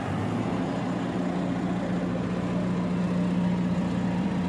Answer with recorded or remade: recorded